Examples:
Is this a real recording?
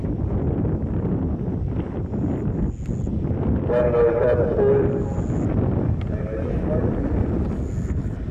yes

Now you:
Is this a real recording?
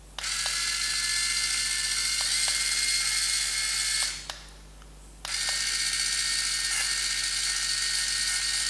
yes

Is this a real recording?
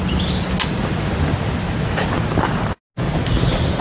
yes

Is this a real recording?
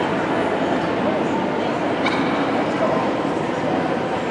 yes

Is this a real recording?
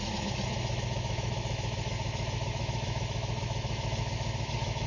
no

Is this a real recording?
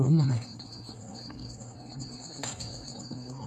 no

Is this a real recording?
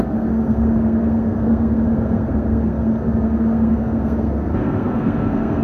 no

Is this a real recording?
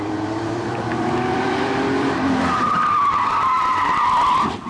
no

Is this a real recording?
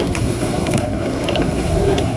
no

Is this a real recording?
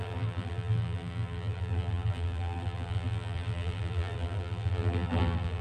no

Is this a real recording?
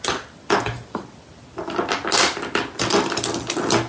yes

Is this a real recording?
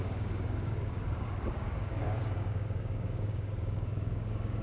no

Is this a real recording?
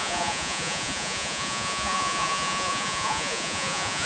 no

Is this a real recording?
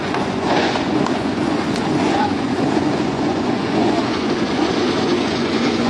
no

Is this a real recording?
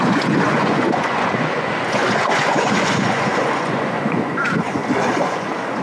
no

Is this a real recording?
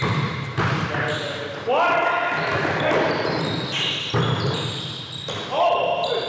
yes